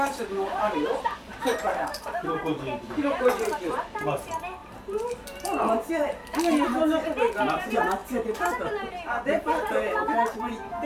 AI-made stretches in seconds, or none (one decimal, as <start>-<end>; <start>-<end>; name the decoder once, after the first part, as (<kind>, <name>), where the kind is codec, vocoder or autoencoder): 0.0-10.9 (vocoder, BigVGAN v2)